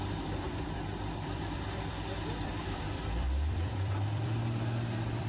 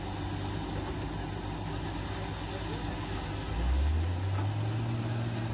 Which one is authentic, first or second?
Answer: second